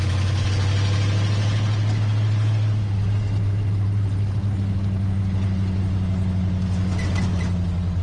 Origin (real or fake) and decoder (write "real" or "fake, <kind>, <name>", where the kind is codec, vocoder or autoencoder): real